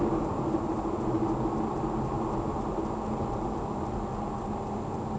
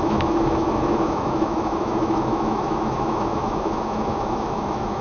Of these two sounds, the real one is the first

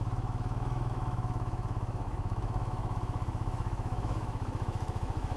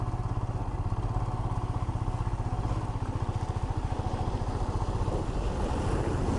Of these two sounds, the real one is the second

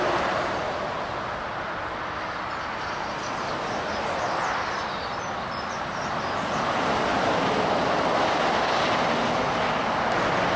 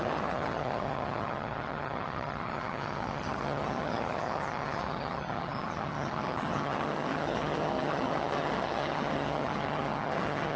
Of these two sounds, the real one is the first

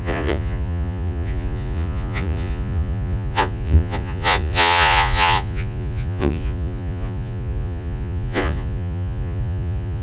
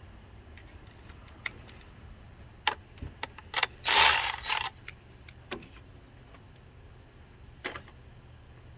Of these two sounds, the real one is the second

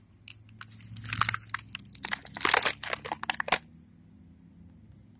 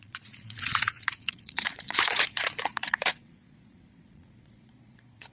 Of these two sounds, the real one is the first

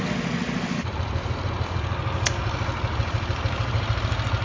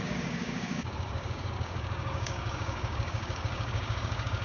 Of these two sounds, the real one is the first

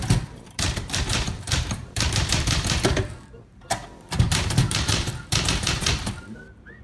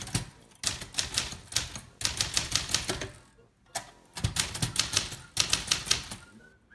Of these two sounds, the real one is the second